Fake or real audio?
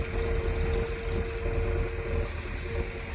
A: real